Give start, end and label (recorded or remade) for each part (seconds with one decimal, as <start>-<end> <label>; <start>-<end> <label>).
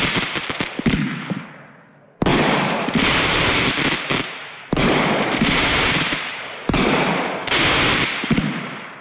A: 0.0-0.4 recorded; 0.4-1.6 remade; 1.6-2.3 recorded; 2.3-3.7 remade; 3.7-4.4 recorded; 4.4-7.2 remade; 7.2-9.0 recorded